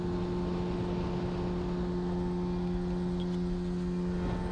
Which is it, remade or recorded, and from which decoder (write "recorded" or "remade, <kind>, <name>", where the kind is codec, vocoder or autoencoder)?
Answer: recorded